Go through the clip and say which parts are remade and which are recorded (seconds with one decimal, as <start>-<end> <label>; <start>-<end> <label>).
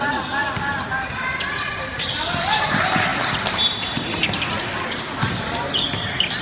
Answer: 0.0-6.4 recorded